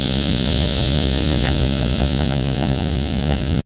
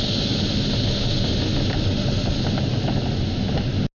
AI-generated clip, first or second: first